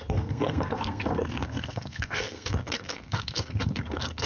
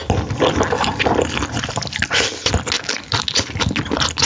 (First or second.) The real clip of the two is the second